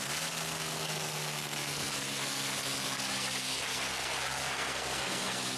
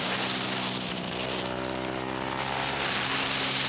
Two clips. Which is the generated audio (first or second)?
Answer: first